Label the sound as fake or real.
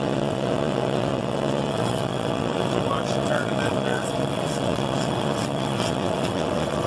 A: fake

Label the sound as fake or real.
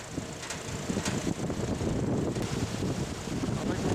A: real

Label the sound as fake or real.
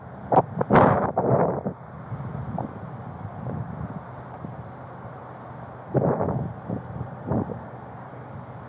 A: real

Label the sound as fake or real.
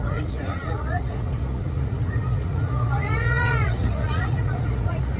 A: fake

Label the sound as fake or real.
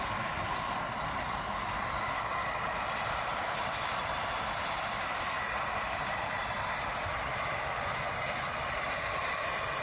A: real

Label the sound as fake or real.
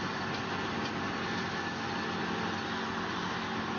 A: real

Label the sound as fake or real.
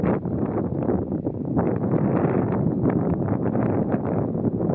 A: real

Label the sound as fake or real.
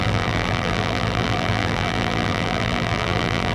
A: fake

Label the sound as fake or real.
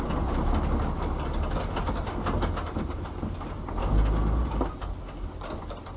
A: real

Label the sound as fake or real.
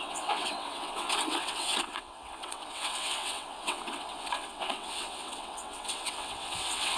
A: fake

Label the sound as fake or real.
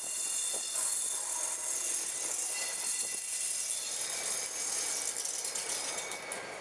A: real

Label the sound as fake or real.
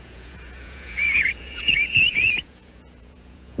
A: fake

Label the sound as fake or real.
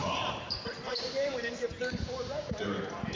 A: fake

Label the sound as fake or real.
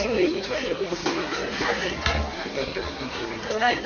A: fake